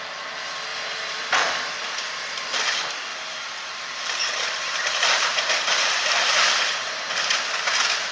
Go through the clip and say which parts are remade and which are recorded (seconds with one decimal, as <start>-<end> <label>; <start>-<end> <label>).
0.0-0.7 recorded; 0.7-2.5 remade; 2.5-3.1 recorded; 3.1-7.2 remade; 7.2-8.1 recorded